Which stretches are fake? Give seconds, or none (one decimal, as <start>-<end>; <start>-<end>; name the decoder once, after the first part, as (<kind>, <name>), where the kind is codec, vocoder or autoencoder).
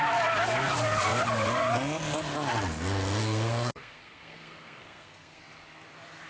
3.2-5.4 (codec, SNAC)